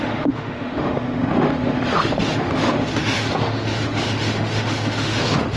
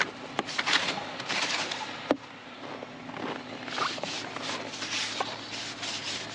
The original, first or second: second